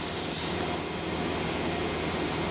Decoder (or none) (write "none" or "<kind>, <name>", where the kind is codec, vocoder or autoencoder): none